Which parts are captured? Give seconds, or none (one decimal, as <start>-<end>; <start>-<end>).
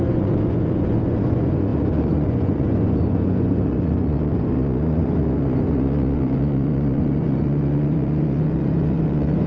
none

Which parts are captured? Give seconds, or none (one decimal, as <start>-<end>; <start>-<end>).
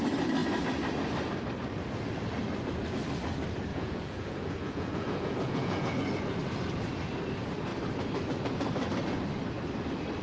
0.0-3.7; 5.9-10.2